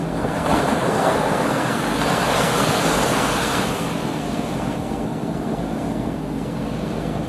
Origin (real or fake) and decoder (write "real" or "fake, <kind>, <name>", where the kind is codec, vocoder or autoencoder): fake, codec, SNAC